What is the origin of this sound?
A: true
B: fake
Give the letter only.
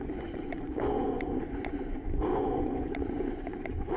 B